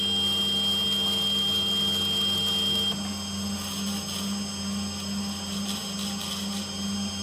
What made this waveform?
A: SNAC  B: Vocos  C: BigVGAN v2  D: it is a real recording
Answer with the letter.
D